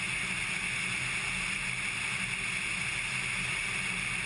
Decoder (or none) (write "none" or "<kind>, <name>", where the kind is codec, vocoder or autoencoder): none